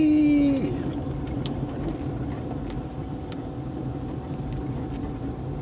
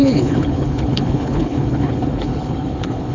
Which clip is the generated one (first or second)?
second